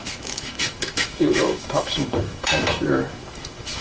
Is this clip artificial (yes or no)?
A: yes